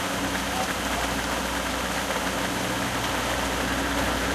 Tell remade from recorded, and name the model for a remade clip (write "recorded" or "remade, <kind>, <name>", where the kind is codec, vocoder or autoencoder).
remade, vocoder, BigVGAN v2